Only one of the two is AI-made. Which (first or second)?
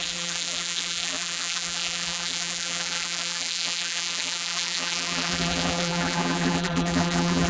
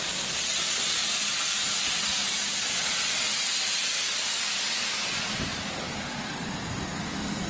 first